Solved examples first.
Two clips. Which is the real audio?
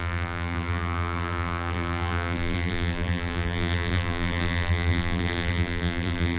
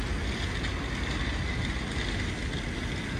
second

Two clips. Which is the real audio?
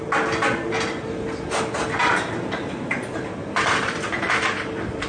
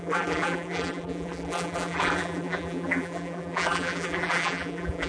first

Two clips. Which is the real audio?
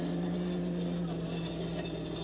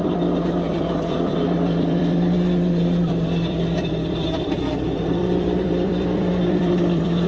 first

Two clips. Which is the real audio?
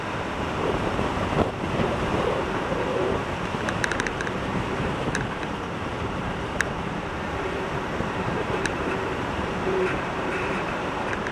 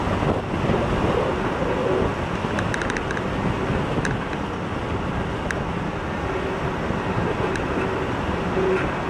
second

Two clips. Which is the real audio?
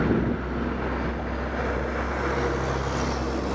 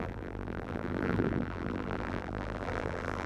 first